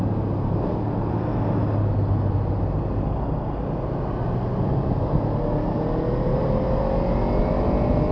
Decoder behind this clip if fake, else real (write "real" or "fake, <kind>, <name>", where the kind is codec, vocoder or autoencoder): real